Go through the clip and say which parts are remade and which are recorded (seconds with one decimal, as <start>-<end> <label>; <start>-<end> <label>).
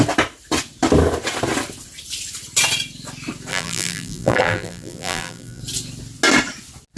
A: 0.0-3.5 recorded; 3.5-5.6 remade; 5.6-7.0 recorded